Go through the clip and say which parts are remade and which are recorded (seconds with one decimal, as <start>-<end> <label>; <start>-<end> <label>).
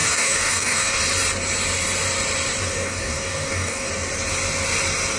0.0-1.0 remade; 1.0-2.6 recorded; 2.6-3.9 remade; 3.9-5.2 recorded